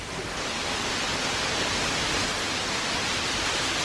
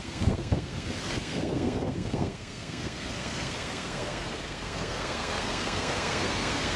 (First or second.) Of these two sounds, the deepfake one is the second